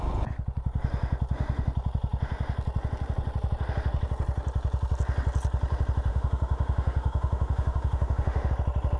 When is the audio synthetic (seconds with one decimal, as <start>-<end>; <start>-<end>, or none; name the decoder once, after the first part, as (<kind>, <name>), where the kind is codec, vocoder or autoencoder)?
6.1-8.5 (autoencoder, DAC-VAE)